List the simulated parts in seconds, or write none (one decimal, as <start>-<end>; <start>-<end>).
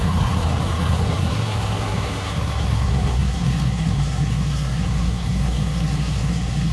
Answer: 0.0-6.7